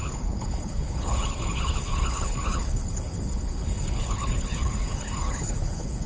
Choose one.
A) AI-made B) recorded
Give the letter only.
A